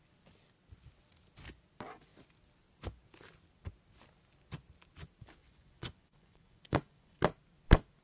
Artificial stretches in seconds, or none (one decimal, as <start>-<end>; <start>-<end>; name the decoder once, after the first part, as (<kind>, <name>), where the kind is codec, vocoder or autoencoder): 5.4-7.2 (vocoder, Vocos)